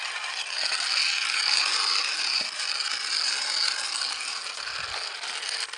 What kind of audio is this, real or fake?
real